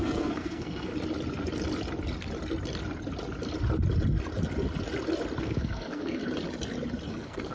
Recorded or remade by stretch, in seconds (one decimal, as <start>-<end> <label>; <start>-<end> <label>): 0.0-0.9 remade; 0.9-5.4 recorded; 5.4-6.2 remade; 6.2-7.1 recorded; 7.1-7.5 remade